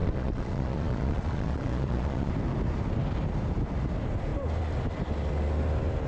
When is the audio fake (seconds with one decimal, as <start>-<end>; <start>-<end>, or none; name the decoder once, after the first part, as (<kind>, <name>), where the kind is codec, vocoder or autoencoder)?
0.0-2.3 (vocoder, Vocos)